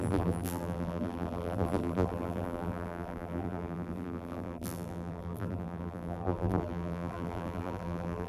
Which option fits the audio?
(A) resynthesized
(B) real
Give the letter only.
A